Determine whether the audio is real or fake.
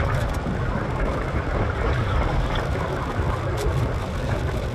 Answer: real